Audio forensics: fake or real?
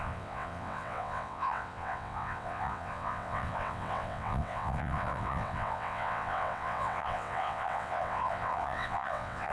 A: fake